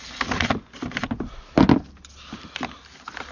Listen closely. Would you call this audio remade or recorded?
recorded